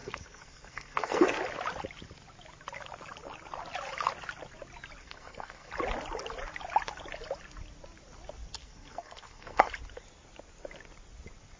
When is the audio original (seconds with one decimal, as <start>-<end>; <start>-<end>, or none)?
1.4-5.0; 5.7-8.6; 9.7-11.6